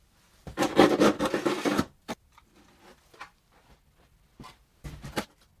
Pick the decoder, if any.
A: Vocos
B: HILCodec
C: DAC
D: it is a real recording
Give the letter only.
D